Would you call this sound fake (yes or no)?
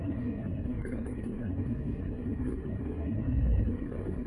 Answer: yes